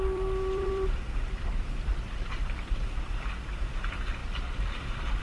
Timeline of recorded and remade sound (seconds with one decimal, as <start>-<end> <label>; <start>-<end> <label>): 0.0-5.2 remade